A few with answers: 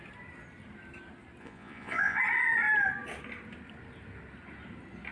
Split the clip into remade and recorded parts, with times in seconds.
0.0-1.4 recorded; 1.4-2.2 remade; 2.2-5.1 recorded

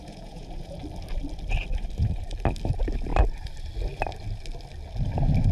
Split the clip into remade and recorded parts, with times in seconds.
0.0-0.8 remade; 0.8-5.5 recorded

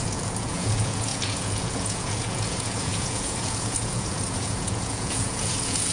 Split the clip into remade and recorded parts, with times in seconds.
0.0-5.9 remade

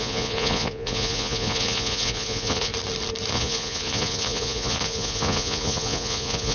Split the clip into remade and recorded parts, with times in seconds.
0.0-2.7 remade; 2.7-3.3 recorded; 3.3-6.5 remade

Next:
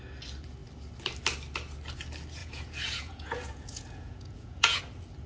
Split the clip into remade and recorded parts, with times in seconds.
0.0-2.4 recorded; 2.4-4.8 remade; 4.8-5.3 recorded

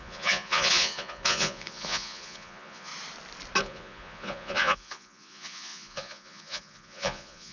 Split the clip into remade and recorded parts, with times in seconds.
0.0-2.9 remade; 2.9-3.6 recorded; 3.6-7.5 remade